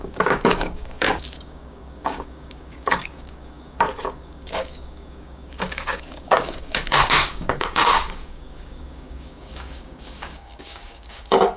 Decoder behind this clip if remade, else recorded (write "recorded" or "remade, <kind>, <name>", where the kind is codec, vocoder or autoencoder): remade, codec, DAC